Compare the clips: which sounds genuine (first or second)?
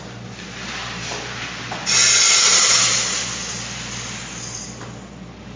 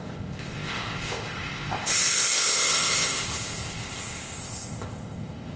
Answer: first